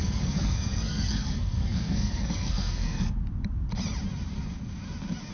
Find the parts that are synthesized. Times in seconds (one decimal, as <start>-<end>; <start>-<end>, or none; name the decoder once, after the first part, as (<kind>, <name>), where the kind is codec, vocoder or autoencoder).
0.0-3.2 (codec, SNAC)